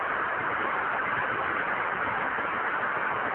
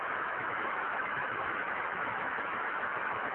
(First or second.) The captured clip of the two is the first